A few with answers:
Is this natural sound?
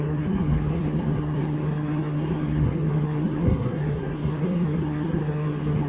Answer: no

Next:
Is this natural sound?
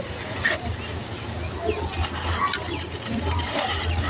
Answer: yes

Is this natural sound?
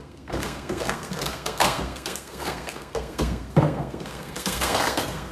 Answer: no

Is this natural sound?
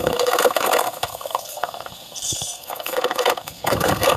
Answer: no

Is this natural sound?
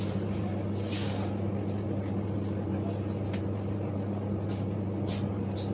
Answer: yes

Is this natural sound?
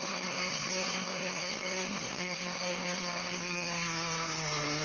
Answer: no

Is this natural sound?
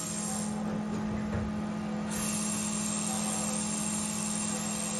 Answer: yes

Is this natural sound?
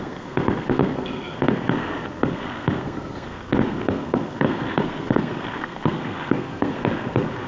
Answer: no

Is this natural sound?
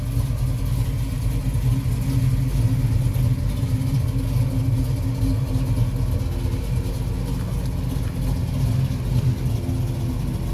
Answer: yes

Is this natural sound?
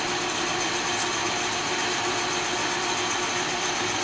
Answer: yes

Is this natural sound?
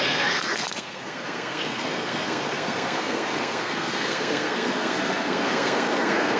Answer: no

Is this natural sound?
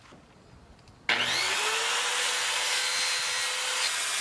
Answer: yes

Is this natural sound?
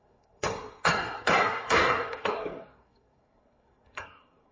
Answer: no